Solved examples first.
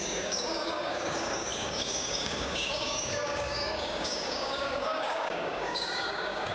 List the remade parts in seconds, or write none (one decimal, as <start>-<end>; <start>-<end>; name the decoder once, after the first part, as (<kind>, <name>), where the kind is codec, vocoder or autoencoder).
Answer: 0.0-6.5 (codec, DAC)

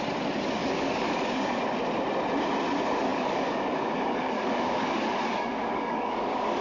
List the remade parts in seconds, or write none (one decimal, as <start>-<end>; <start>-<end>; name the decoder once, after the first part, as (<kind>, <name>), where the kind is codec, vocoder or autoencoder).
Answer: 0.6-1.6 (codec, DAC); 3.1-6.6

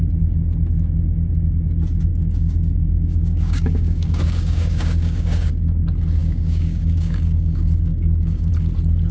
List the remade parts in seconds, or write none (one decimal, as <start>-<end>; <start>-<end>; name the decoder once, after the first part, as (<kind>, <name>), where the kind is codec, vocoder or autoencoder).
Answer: 2.1-5.5 (codec, DAC); 6.2-8.5

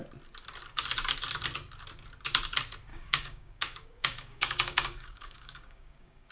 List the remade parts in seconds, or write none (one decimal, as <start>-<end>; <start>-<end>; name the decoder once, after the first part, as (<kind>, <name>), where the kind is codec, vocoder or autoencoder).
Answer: 2.9-6.3 (codec, DAC)

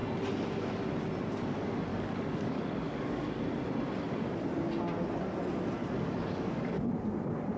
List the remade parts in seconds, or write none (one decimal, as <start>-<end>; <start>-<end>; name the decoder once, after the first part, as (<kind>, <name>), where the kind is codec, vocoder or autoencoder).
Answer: 1.9-3.4 (codec, DAC); 5.8-6.9

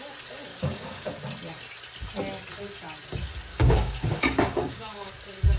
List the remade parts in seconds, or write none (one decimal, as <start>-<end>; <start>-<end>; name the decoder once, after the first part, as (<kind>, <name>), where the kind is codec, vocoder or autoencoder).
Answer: 0.5-1.1 (codec, DAC); 3.5-5.1